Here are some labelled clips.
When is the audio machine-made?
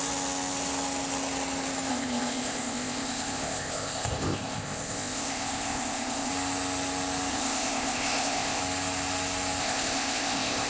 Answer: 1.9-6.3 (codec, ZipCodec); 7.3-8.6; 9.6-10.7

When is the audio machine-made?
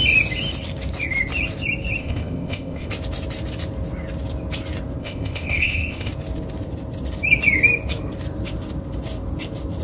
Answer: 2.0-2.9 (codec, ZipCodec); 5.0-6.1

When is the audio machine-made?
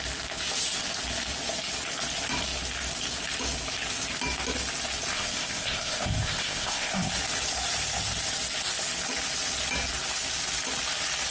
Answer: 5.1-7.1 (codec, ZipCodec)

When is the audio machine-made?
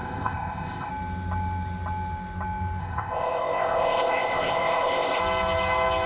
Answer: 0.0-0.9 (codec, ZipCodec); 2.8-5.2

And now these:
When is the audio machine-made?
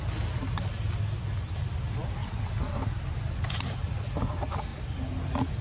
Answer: none